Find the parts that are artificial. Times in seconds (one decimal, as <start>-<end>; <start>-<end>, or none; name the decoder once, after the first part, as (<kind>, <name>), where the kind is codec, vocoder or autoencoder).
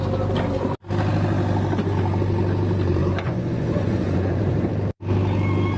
3.0-4.7 (vocoder, Vocos)